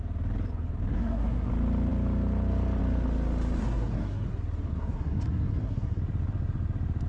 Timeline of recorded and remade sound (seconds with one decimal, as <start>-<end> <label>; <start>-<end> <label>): 0.0-0.9 recorded; 0.9-1.5 remade; 1.5-3.6 recorded; 3.6-4.3 remade; 4.3-4.7 recorded; 4.7-6.0 remade; 6.0-7.1 recorded